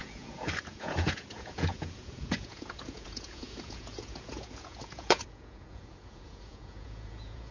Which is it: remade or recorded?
remade